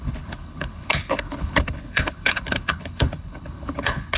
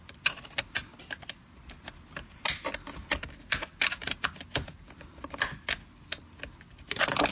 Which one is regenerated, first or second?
first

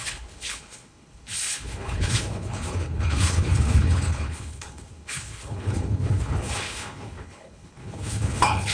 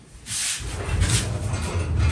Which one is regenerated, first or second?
first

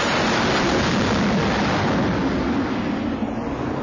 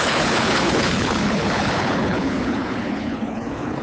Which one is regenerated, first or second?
second